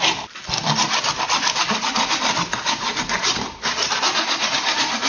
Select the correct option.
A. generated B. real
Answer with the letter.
B